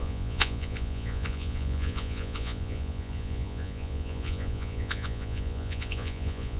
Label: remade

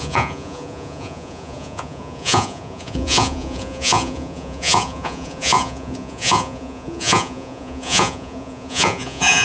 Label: remade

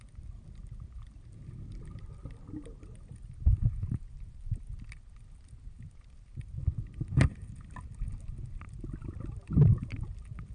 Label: recorded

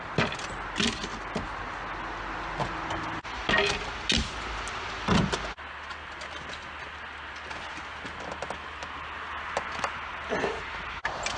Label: recorded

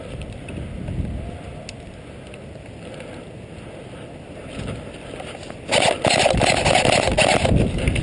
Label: recorded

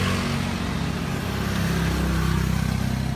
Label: recorded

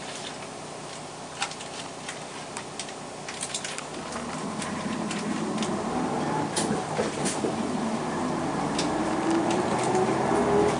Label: recorded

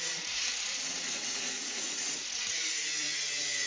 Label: remade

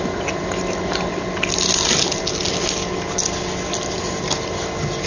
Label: recorded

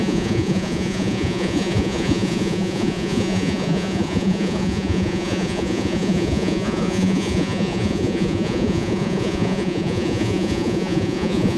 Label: remade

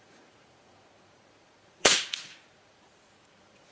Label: remade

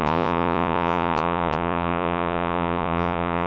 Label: remade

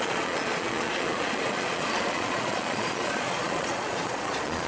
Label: remade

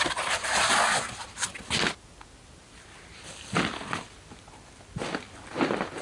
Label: recorded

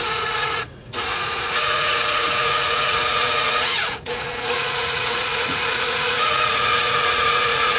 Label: remade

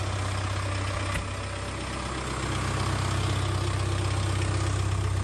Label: recorded